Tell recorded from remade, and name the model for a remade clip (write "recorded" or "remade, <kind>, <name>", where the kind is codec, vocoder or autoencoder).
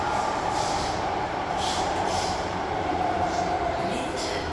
remade, vocoder, BigVGAN v2